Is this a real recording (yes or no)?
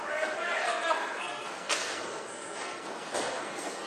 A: no